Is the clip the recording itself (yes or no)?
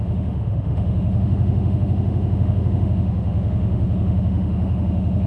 no